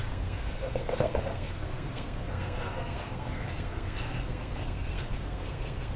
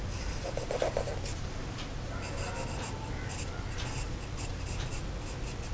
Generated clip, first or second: first